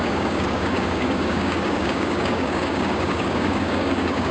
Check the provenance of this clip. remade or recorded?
remade